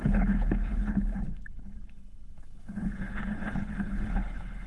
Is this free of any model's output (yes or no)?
no